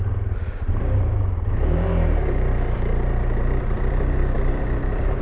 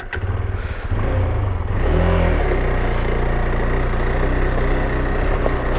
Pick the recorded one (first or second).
second